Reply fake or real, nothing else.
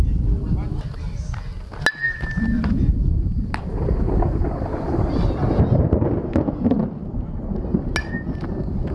real